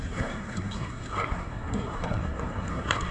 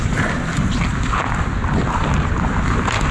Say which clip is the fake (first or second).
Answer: first